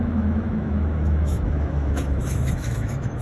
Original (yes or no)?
no